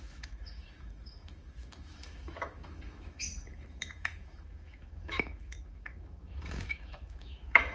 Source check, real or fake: fake